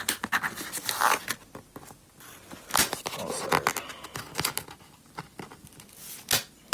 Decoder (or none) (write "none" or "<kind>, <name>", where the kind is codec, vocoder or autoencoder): none